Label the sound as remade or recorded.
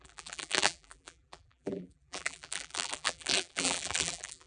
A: remade